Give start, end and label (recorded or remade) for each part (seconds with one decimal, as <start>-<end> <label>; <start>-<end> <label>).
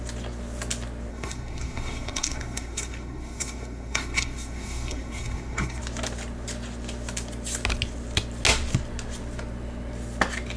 0.0-1.1 recorded; 1.1-5.8 remade; 5.8-10.6 recorded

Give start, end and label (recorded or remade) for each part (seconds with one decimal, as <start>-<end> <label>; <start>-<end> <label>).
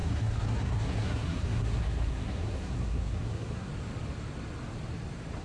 0.0-3.7 remade; 3.7-5.4 recorded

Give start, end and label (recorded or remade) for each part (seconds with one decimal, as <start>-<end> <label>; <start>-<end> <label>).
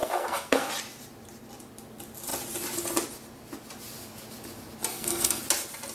0.0-0.7 remade; 0.7-4.9 recorded; 4.9-5.4 remade; 5.4-5.9 recorded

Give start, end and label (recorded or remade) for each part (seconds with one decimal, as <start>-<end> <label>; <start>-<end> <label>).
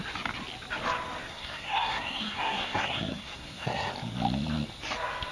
0.0-1.3 recorded; 1.3-3.9 remade; 3.9-5.3 recorded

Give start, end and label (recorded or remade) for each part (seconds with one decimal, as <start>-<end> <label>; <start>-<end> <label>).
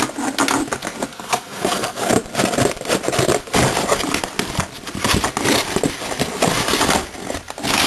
0.0-1.1 recorded; 1.1-2.1 remade; 2.1-7.9 recorded